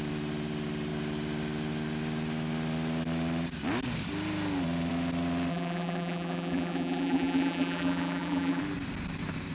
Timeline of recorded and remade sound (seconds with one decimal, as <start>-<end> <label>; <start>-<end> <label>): 0.0-5.5 recorded; 5.5-8.6 remade; 8.6-9.5 recorded